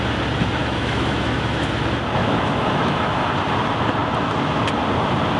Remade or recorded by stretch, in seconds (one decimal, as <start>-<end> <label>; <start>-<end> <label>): 0.0-0.6 recorded; 0.6-1.7 remade; 1.7-2.2 recorded; 2.2-3.2 remade; 3.2-5.4 recorded